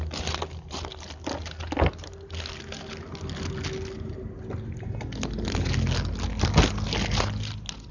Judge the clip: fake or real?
real